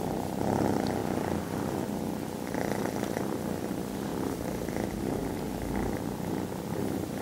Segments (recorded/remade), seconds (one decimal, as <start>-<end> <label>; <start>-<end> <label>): 0.0-7.2 recorded